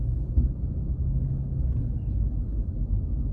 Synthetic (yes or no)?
no